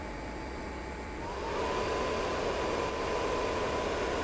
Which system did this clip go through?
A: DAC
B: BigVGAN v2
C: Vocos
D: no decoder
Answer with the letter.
D